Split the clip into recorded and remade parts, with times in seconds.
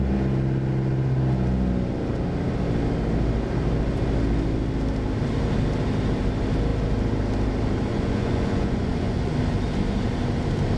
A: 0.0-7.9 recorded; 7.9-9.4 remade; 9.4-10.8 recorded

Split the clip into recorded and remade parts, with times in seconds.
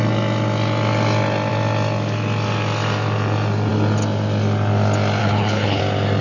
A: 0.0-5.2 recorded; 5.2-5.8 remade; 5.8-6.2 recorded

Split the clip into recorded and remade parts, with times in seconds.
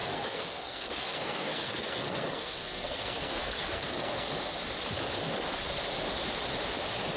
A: 0.0-4.3 remade; 4.3-7.2 recorded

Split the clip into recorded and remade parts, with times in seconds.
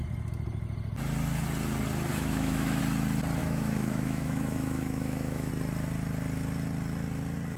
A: 0.0-2.1 recorded; 2.1-2.8 remade; 2.8-3.4 recorded; 3.4-5.5 remade; 5.5-7.6 recorded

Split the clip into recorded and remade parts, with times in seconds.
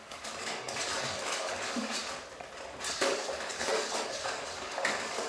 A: 0.0-2.0 remade; 2.0-2.9 recorded; 2.9-5.3 remade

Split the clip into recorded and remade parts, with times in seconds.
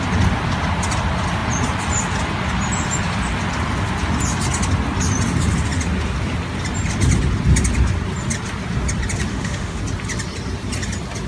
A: 0.0-9.3 recorded; 9.3-9.8 remade; 9.8-11.3 recorded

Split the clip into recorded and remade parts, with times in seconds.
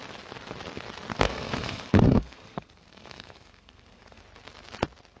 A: 0.0-1.1 recorded; 1.1-4.2 remade; 4.2-5.2 recorded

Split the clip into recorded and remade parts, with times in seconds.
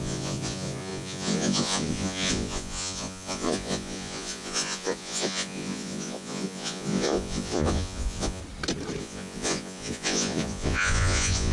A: 0.0-8.4 remade; 8.4-9.0 recorded; 9.0-11.5 remade